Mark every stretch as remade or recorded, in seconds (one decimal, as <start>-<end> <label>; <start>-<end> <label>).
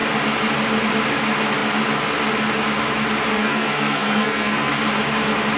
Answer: 0.0-3.3 recorded; 3.3-4.7 remade; 4.7-5.6 recorded